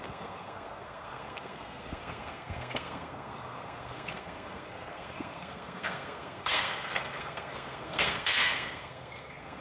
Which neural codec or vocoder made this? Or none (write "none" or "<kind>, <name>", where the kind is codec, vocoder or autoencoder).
codec, SNAC